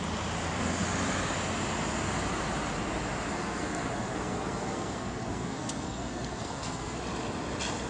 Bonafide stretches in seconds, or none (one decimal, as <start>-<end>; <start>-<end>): 0.0-3.3; 7.0-7.9